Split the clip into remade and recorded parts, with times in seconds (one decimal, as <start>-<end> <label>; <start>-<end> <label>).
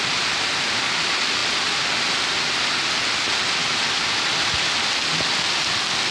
0.0-6.1 recorded